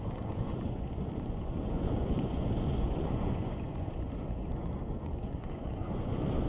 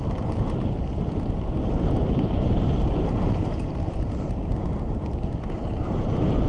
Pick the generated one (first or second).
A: first